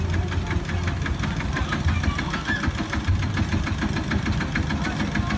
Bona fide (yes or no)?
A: yes